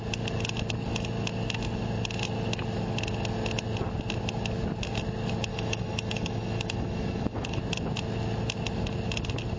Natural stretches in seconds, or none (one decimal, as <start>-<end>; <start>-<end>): 0.0-5.5; 7.6-9.6